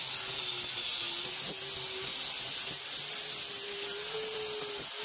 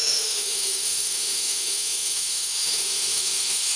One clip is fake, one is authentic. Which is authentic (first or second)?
first